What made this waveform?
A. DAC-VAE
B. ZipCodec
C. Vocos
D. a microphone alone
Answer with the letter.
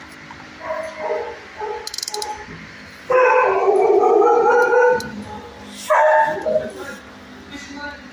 D